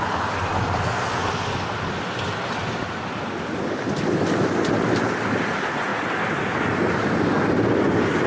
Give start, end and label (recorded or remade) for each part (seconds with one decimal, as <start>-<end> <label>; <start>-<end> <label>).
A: 0.0-8.3 recorded